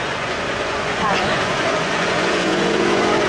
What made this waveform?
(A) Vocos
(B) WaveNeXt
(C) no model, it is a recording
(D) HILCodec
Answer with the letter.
A